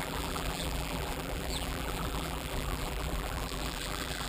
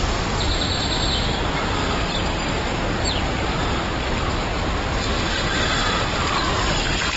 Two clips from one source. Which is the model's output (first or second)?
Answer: first